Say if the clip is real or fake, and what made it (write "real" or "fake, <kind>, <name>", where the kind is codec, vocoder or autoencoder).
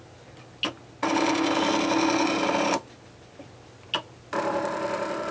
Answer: real